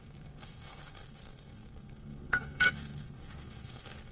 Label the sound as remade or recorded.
remade